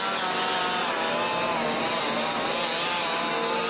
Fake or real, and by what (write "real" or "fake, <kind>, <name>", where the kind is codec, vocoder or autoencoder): real